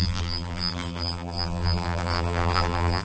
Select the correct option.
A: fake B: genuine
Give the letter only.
A